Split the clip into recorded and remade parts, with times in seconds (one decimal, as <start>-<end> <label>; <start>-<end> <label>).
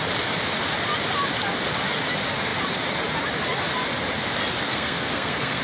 0.0-4.7 recorded; 4.7-5.6 remade